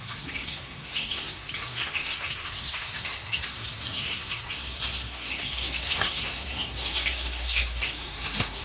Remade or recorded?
remade